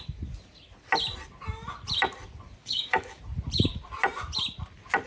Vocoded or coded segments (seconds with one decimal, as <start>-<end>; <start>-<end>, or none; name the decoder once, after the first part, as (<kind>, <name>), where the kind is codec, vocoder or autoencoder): 2.6-3.2 (codec, DAC)